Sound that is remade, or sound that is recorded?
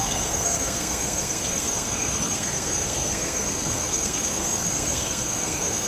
remade